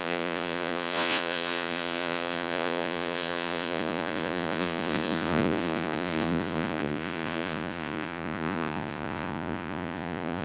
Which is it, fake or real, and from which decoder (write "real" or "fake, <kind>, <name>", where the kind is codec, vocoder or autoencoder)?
fake, vocoder, Vocos